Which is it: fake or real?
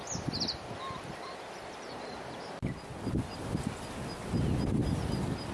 real